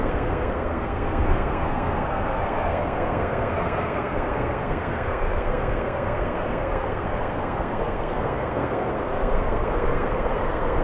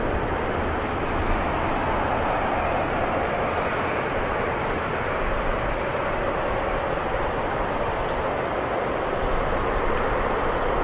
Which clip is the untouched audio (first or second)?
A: second